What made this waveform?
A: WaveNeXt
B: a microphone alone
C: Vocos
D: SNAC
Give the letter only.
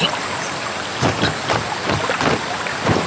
B